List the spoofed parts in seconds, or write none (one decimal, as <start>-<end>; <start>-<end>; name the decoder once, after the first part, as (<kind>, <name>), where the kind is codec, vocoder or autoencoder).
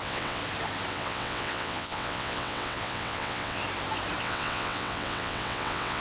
0.0-0.4 (vocoder, WaveNeXt); 0.9-3.6; 4.2-6.0